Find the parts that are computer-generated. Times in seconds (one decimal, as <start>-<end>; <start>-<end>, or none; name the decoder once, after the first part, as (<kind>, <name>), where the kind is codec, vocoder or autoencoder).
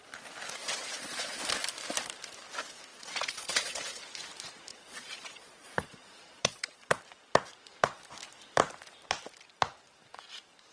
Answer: 0.6-1.4 (vocoder, Vocos); 2.9-4.0; 4.7-7.0